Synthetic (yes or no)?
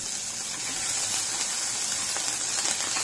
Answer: no